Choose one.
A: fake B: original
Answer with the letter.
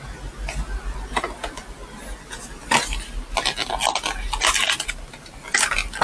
B